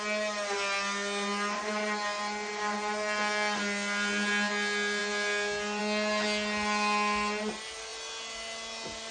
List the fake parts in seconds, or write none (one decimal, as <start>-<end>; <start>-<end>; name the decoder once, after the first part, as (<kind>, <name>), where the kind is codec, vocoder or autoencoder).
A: none